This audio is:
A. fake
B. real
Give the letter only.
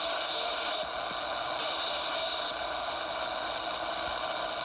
B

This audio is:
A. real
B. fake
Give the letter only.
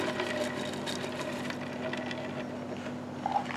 A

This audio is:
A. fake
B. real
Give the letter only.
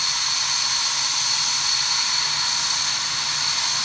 B